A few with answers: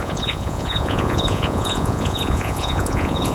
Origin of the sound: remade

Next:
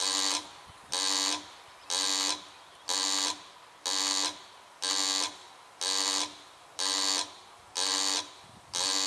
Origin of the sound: recorded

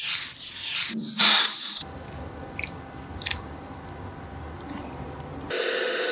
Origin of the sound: remade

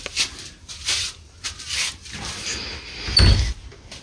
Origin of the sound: recorded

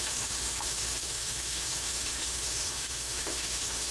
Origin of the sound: remade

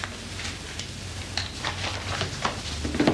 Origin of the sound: recorded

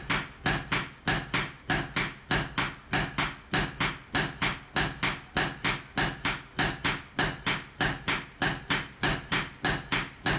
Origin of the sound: recorded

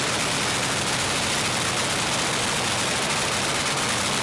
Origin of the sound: recorded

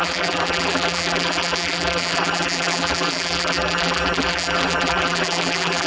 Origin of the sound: remade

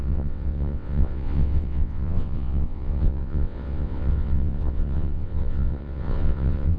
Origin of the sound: remade